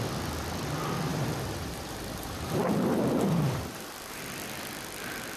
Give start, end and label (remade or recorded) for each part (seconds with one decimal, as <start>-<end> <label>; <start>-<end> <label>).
0.0-1.1 recorded; 1.1-4.2 remade; 4.2-5.4 recorded